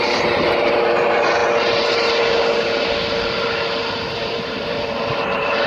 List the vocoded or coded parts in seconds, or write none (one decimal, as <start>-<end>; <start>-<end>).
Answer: 0.0-1.4; 4.1-5.7